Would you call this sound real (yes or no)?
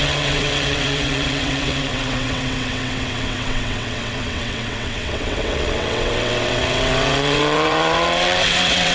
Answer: no